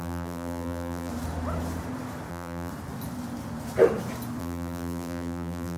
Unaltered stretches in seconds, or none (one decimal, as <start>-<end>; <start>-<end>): 1.1-2.3; 2.7-4.4